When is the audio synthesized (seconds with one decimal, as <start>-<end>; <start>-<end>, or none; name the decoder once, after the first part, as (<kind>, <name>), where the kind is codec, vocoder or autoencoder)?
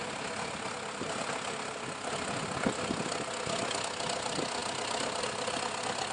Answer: none